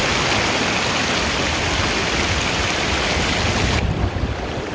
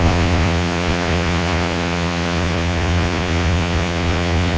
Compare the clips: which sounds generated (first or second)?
second